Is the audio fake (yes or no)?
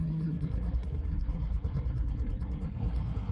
yes